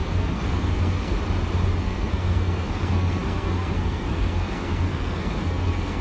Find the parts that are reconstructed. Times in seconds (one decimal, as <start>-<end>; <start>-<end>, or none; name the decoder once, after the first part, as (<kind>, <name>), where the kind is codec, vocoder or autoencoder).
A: 0.0-1.1 (codec, SNAC); 1.8-6.0